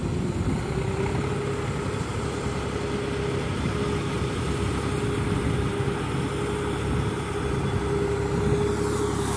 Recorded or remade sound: recorded